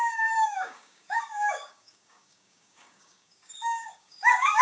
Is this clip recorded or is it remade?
remade